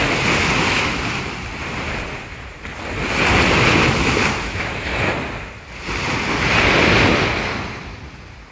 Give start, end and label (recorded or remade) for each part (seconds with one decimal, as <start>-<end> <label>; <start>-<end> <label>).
0.0-4.4 recorded; 4.4-5.1 remade; 5.1-8.5 recorded